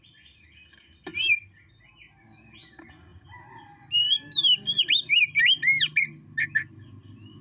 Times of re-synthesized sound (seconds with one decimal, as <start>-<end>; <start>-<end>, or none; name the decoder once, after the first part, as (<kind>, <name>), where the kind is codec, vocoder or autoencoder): none